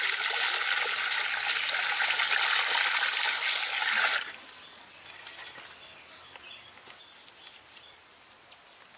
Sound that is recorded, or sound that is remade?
recorded